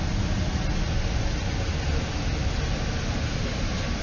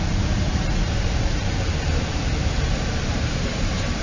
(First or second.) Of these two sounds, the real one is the first